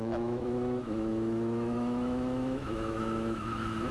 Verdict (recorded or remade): remade